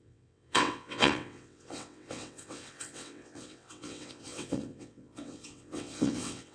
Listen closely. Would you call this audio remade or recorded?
remade